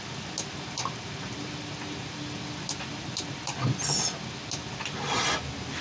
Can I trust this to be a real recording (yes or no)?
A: yes